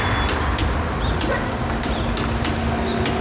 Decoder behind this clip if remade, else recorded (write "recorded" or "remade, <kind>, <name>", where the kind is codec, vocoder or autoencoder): recorded